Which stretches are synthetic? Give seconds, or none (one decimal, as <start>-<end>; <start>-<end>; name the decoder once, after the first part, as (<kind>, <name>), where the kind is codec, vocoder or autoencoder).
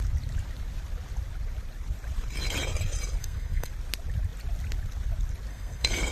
3.2-3.7 (codec, SNAC); 5.5-6.1